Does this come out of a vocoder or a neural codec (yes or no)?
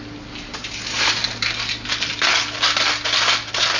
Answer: no